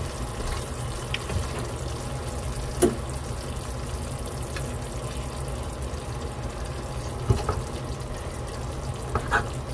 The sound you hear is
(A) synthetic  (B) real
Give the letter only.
B